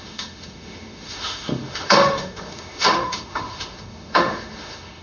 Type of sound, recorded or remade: remade